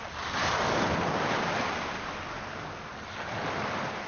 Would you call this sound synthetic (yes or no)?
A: no